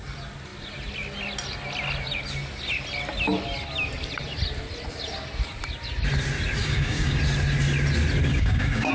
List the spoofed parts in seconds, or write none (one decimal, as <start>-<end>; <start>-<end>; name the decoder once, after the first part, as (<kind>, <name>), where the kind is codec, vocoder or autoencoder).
6.6-7.2 (codec, DAC); 8.3-8.9